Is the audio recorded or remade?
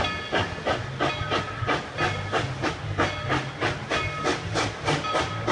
recorded